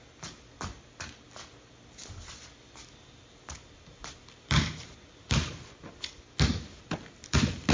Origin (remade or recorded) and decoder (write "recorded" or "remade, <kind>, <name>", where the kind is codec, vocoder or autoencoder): recorded